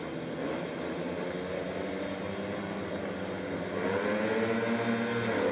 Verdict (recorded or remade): recorded